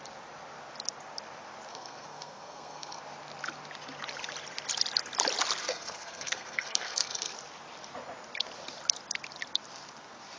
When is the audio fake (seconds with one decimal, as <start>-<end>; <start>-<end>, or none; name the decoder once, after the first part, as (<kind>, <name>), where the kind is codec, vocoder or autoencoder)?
1.7-3.0 (codec, SNAC); 5.6-7.3